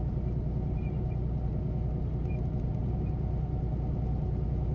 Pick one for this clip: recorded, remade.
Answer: recorded